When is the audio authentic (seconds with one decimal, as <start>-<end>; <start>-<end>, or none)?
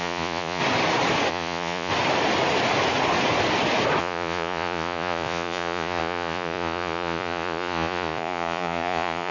0.6-1.3; 1.9-4.0